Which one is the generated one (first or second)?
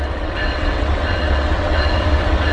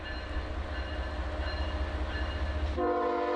first